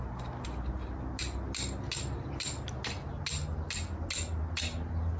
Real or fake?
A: real